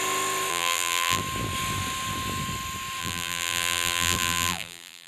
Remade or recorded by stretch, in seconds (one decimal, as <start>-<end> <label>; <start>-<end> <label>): 0.0-0.5 recorded; 0.5-1.2 remade; 1.2-3.0 recorded; 3.0-5.1 remade